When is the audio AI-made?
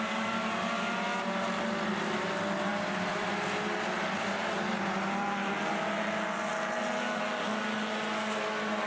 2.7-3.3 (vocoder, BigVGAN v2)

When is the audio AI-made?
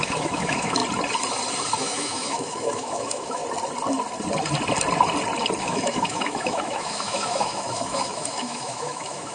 0.0-0.8 (autoencoder, DAC-VAE); 1.8-3.4; 5.6-9.3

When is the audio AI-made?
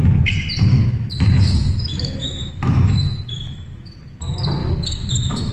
0.7-4.0 (autoencoder, DAC-VAE); 4.6-5.5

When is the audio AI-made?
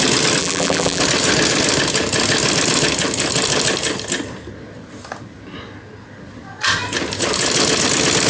0.4-1.0 (vocoder, BigVGAN v2)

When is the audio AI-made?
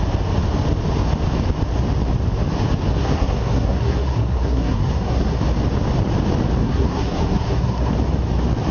2.9-5.4 (codec, SNAC); 6.6-7.9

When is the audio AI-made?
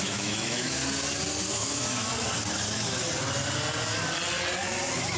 0.0-0.8 (autoencoder, DAC-VAE); 1.5-2.1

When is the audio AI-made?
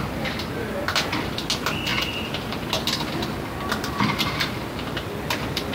none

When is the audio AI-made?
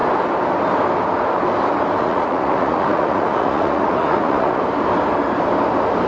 2.0-4.6 (vocoder, Vocos)